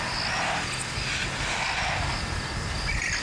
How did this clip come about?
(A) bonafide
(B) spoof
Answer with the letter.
A